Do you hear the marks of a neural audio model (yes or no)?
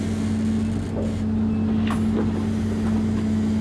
no